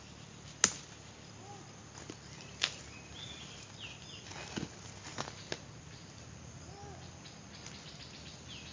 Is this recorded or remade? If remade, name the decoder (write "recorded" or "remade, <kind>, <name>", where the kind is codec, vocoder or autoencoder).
recorded